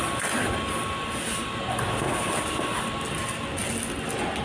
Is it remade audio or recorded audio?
recorded